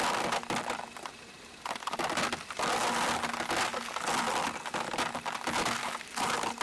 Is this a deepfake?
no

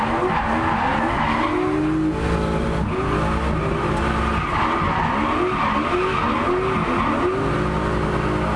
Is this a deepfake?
no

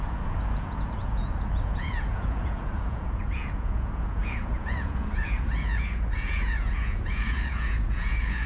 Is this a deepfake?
yes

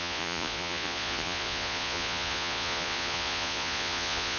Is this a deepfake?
yes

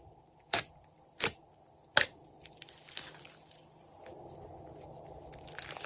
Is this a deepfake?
no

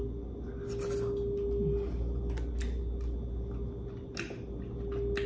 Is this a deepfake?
no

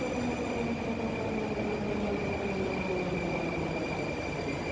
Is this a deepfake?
no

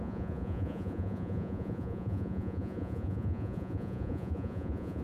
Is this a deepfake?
yes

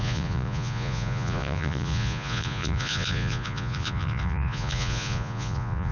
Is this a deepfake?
yes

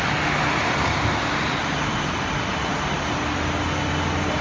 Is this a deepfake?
no